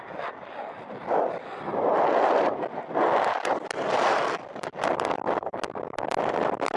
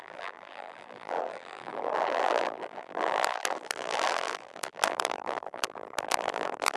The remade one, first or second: second